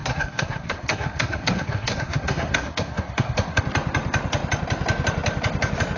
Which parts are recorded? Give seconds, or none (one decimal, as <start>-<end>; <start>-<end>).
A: 3.6-6.0